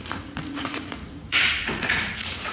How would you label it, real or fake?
fake